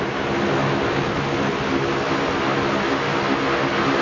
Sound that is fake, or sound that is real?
real